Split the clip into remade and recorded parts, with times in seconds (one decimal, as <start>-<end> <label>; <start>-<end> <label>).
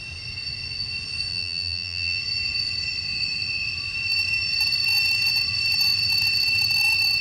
0.0-1.3 recorded; 1.3-2.2 remade; 2.2-7.2 recorded